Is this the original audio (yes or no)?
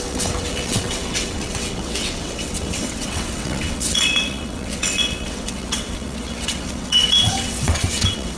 no